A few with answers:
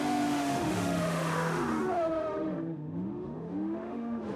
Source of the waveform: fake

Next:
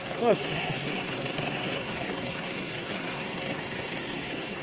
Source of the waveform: fake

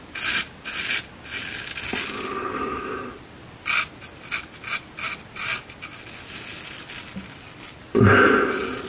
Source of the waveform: real